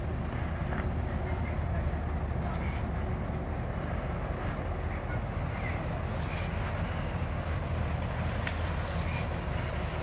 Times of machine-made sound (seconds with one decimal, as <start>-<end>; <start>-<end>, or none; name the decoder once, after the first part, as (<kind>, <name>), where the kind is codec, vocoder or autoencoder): none